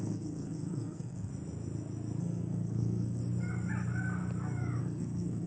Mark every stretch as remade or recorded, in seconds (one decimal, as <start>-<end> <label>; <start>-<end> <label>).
0.0-1.3 remade; 1.3-2.2 recorded; 2.2-3.2 remade; 3.2-4.8 recorded; 4.8-5.5 remade